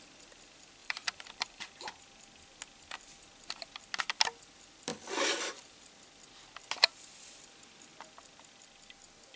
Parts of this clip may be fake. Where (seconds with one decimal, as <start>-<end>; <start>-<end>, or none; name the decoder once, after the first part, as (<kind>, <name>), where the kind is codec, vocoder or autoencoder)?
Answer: 0.8-1.6 (vocoder, BigVGAN v2); 4.9-5.9